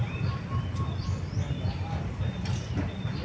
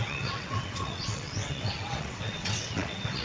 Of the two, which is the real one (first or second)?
first